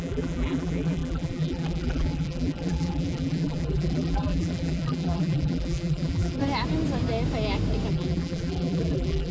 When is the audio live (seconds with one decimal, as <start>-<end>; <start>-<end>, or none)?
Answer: 6.4-7.9